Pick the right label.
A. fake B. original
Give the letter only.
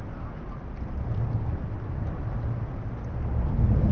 B